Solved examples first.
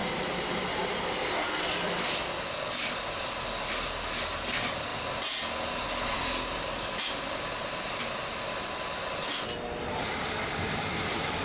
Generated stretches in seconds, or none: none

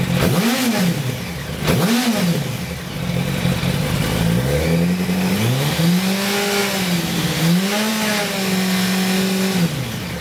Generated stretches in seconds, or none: none

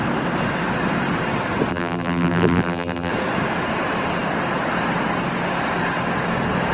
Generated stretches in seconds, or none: 1.7-3.1